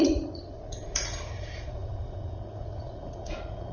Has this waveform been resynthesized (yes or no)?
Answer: yes